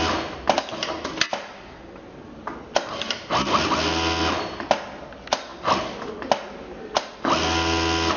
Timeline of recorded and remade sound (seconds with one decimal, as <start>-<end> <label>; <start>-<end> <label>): 0.0-8.2 recorded